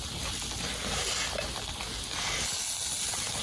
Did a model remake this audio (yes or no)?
no